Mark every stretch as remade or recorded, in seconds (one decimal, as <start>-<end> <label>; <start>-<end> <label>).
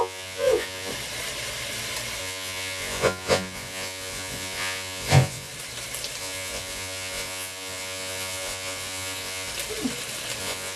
0.0-0.9 remade; 0.9-2.2 recorded; 2.2-5.5 remade; 5.5-6.2 recorded; 6.2-9.5 remade; 9.5-10.4 recorded; 10.4-10.8 remade